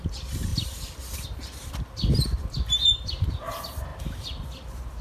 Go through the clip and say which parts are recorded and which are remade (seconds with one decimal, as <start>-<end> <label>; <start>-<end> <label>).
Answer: 0.0-0.5 recorded; 0.5-3.3 remade; 3.3-3.9 recorded; 3.9-5.0 remade